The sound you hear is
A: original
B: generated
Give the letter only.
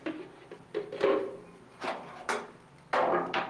A